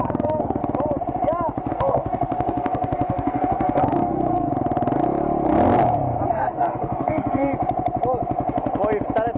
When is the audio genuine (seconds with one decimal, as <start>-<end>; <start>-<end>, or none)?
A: 0.6-1.7; 4.5-6.3; 7.5-9.4